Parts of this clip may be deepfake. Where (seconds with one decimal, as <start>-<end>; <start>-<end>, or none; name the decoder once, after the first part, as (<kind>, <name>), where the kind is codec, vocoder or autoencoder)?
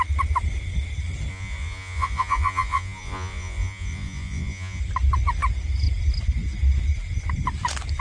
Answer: 1.3-4.8 (vocoder, Vocos)